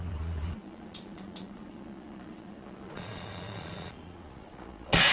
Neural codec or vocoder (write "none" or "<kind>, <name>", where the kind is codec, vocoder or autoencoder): vocoder, Vocos